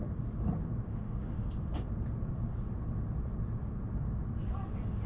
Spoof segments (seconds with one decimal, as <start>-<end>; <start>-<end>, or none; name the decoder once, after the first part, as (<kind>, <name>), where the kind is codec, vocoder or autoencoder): 0.9-1.5 (autoencoder, DAC-VAE)